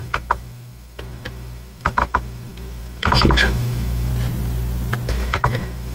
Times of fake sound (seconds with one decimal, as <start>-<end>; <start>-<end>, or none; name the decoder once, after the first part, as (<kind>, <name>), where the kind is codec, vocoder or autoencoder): 0.0-4.1 (autoencoder, DAC-VAE); 5.1-5.9